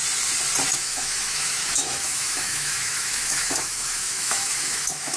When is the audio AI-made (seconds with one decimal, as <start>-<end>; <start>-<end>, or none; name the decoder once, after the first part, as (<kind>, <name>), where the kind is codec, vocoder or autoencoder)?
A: 0.7-5.2 (autoencoder, DAC-VAE)